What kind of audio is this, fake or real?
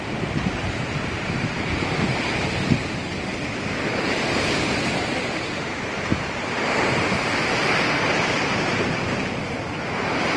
fake